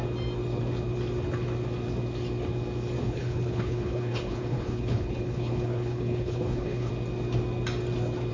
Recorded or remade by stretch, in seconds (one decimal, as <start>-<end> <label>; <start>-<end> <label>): 0.0-3.0 recorded; 3.0-6.9 remade; 6.9-8.3 recorded